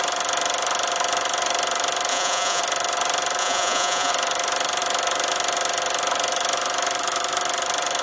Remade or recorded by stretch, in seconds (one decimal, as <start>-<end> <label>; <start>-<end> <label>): 0.0-2.1 recorded; 2.1-2.6 remade; 2.6-3.4 recorded; 3.4-4.1 remade; 4.1-8.0 recorded